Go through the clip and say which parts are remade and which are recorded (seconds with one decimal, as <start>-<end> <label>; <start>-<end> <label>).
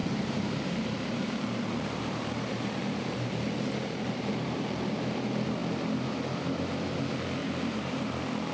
0.0-4.9 remade; 4.9-7.4 recorded; 7.4-8.1 remade; 8.1-8.5 recorded